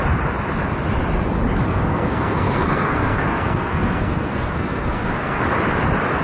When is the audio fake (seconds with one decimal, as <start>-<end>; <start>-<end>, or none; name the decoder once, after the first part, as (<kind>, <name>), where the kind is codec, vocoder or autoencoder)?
1.7-5.4 (codec, SNAC)